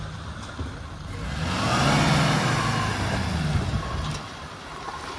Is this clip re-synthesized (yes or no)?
no